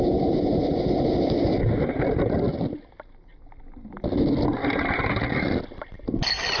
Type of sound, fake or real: real